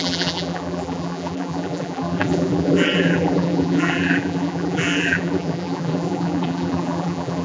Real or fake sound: fake